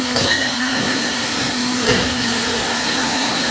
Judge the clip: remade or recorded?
remade